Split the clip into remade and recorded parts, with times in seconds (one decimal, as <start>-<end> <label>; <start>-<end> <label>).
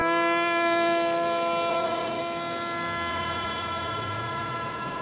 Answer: 0.0-1.7 recorded; 1.7-2.2 remade; 2.2-3.1 recorded; 3.1-5.0 remade